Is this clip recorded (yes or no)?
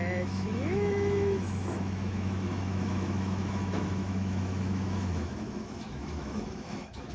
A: no